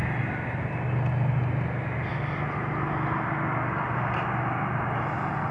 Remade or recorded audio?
recorded